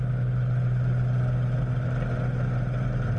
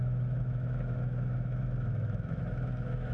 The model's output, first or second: second